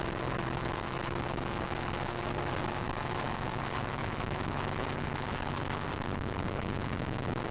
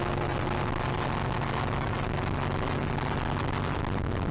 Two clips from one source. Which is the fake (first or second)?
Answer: first